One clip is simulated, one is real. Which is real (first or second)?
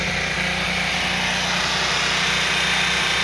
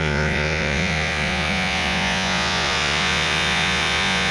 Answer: first